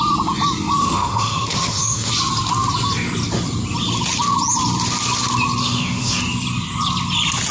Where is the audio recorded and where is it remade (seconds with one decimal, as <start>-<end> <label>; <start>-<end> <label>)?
0.0-0.8 recorded; 0.8-2.1 remade; 2.1-5.6 recorded; 5.6-6.2 remade; 6.2-7.5 recorded